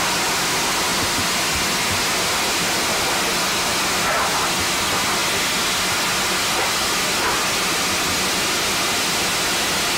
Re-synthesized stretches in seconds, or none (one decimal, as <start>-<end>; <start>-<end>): none